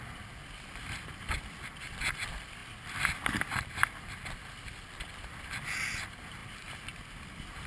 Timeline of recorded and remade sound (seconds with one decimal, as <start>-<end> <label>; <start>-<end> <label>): 0.0-7.7 recorded